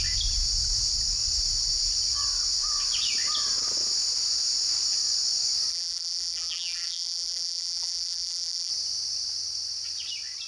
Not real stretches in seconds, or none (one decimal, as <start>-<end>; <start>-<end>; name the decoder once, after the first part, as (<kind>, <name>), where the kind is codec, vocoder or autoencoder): 5.7-8.7 (vocoder, BigVGAN v2)